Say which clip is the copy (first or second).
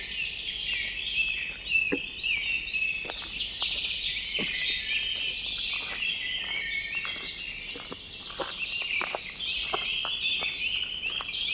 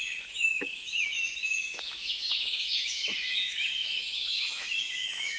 second